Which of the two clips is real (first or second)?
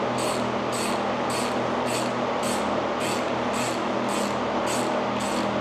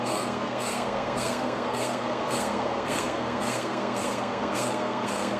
first